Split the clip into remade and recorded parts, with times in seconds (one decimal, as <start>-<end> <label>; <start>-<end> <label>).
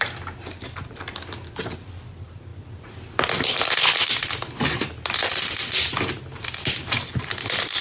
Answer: 0.0-7.8 recorded